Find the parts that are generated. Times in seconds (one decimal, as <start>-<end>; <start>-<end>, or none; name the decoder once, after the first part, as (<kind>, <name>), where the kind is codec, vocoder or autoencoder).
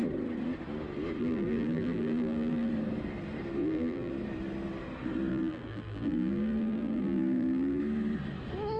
1.2-2.7 (vocoder, BigVGAN v2); 3.6-4.1; 5.3-7.8